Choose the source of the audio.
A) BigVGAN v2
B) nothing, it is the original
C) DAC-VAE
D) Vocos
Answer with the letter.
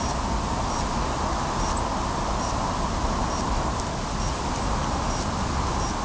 B